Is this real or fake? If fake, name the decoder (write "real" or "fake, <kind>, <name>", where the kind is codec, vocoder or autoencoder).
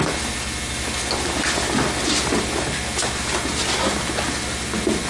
real